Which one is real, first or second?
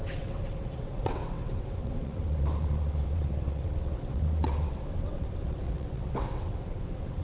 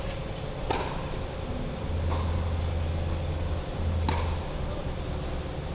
second